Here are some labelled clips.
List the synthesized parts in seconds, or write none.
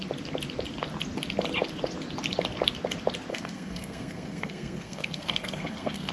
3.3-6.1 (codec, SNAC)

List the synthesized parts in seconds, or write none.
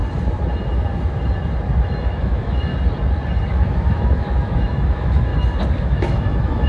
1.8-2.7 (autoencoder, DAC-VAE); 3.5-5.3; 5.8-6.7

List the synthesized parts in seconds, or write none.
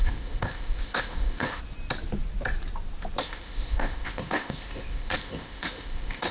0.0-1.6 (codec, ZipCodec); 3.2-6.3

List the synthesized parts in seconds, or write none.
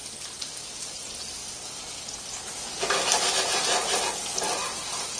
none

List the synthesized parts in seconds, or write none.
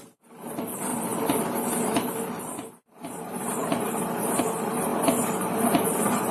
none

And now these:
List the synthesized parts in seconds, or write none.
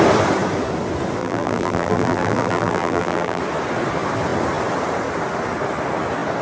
1.2-3.4 (vocoder, BigVGAN v2)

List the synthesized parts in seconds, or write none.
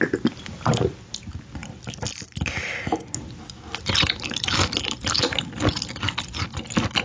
none